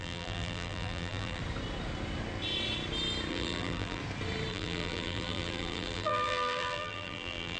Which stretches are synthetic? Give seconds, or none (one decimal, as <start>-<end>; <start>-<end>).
0.0-1.4; 3.3-4.0; 4.5-7.6